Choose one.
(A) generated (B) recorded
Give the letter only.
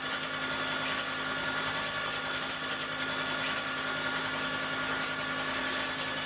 B